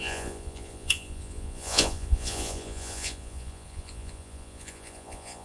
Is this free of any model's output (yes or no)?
no